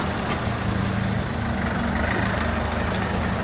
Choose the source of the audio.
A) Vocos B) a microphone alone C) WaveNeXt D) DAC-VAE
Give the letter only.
B